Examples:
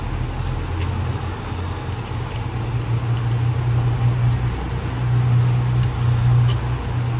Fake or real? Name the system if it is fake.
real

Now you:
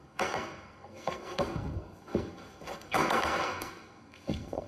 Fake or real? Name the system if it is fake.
fake, codec, SNAC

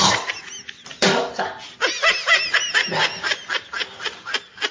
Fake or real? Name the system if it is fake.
real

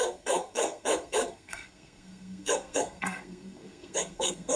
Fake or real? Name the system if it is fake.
fake, codec, SNAC